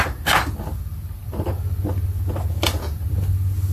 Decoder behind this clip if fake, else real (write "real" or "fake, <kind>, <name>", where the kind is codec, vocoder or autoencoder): real